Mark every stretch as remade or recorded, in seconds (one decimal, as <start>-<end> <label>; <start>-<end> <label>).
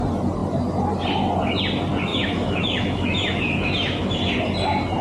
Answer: 0.0-2.1 recorded; 2.1-4.3 remade; 4.3-5.0 recorded